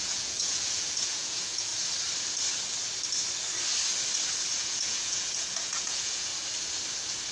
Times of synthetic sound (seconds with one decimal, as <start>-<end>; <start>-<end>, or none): 0.0-1.7; 4.6-6.3